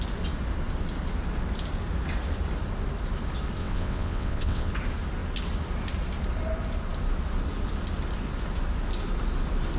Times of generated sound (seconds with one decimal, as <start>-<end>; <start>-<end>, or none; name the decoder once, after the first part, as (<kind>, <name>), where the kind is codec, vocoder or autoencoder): 3.6-4.7 (vocoder, WaveNeXt)